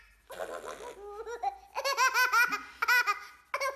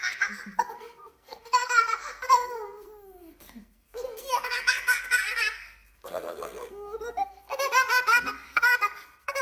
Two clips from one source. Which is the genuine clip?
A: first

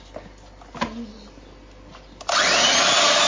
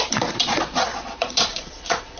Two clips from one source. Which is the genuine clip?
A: first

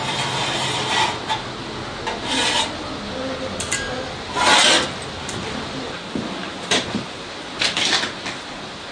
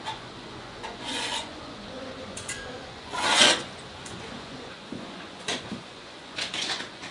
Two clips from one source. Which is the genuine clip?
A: first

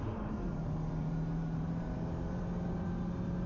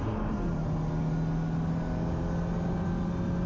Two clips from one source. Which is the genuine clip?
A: second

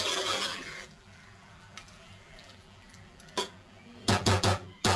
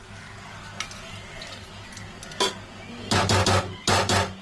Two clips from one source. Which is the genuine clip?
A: second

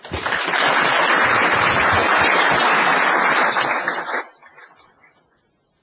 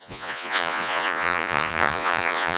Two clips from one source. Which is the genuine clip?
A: first